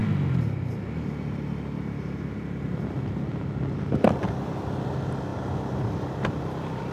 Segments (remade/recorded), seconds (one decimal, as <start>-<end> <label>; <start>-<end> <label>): 0.0-6.9 recorded